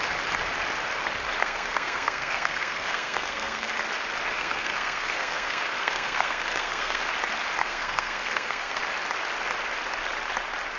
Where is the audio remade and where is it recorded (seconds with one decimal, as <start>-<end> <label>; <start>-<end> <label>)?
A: 0.0-1.4 recorded; 1.4-3.7 remade; 3.7-4.4 recorded; 4.4-7.0 remade; 7.0-7.6 recorded; 7.6-8.8 remade; 8.8-10.8 recorded